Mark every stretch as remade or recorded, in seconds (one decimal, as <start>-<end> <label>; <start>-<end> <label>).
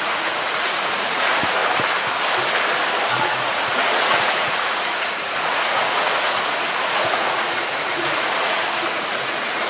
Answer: 0.0-1.6 remade; 1.6-3.1 recorded; 3.1-9.7 remade